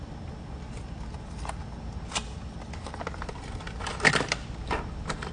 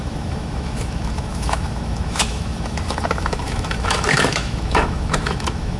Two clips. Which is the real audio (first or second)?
first